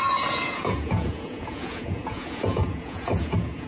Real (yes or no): no